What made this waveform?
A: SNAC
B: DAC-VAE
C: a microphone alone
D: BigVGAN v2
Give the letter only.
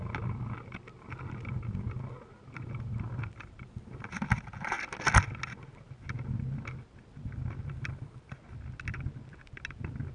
C